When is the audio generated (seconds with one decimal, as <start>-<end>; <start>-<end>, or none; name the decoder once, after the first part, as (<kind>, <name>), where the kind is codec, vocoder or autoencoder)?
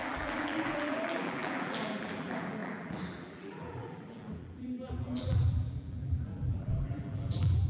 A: 0.0-7.7 (vocoder, BigVGAN v2)